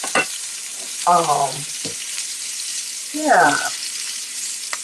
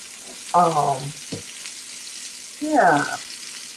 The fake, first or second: first